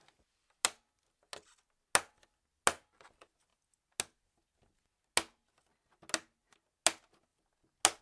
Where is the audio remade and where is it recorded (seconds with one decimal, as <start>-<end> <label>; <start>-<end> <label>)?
0.0-8.0 recorded